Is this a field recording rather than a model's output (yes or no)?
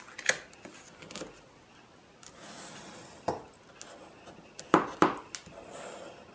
yes